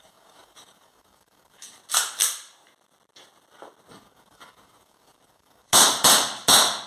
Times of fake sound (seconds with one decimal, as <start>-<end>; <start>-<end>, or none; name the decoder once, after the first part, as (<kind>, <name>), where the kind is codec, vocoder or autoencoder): 0.0-1.8 (codec, DAC); 3.9-5.7